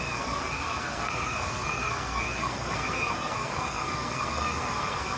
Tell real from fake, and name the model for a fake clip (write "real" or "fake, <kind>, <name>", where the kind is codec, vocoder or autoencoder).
fake, codec, SNAC